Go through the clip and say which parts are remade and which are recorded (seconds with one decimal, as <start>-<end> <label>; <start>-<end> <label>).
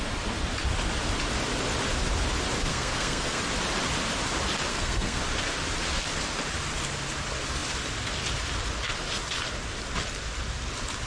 0.0-2.7 recorded; 2.7-3.4 remade; 3.4-4.7 recorded; 4.7-5.2 remade; 5.2-11.1 recorded